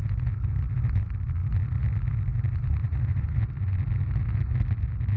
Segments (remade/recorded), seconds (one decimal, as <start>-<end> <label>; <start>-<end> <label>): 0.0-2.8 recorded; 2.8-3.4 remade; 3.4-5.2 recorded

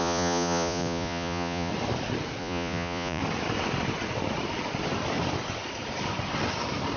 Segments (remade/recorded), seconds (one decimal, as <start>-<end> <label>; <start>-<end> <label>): 0.0-1.7 remade; 1.7-2.4 recorded; 2.4-3.2 remade; 3.2-7.0 recorded

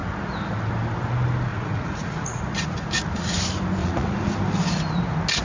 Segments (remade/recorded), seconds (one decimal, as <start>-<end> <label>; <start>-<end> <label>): 0.0-1.5 recorded; 1.5-2.4 remade; 2.4-3.8 recorded; 3.8-4.3 remade; 4.3-5.4 recorded

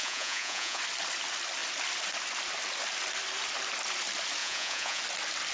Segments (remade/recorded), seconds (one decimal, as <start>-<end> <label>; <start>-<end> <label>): 0.0-0.8 remade; 0.8-4.4 recorded; 4.4-5.0 remade; 5.0-5.5 recorded

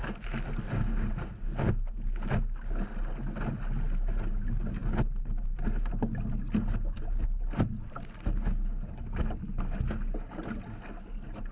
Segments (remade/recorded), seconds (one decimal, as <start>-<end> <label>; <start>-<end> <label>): 0.0-11.5 recorded